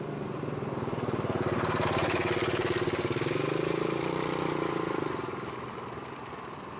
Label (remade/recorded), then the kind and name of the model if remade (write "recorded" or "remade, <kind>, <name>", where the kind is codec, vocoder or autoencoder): recorded